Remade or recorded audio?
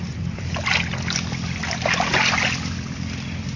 recorded